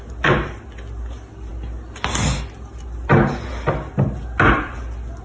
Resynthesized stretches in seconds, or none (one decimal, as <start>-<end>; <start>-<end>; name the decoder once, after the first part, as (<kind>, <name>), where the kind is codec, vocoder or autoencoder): none